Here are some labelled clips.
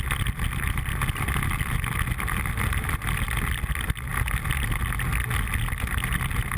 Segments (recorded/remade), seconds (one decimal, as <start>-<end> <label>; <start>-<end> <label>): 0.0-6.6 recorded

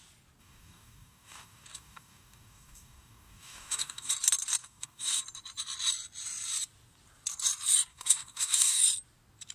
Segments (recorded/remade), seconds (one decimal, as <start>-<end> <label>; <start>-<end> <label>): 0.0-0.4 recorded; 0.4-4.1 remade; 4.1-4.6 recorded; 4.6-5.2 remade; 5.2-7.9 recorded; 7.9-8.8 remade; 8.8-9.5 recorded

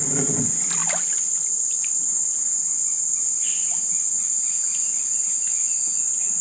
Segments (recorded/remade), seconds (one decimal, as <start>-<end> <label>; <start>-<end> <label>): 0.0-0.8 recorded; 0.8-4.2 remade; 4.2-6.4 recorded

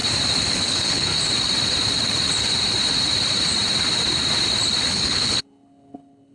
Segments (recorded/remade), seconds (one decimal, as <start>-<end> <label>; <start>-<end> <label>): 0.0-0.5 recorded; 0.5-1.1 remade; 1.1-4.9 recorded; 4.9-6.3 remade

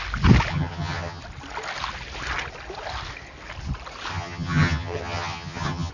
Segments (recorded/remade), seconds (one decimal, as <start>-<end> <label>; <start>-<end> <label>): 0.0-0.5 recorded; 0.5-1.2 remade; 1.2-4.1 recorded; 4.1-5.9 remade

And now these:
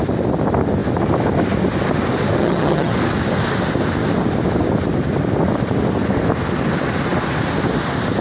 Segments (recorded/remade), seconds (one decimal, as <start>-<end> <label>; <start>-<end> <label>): 0.0-2.4 recorded; 2.4-2.9 remade; 2.9-8.2 recorded